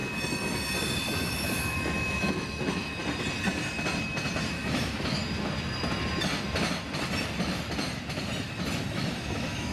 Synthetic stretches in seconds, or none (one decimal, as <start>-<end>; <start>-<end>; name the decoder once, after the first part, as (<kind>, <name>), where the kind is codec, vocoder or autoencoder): 1.2-3.0 (autoencoder, DAC-VAE); 4.5-5.2; 8.9-9.7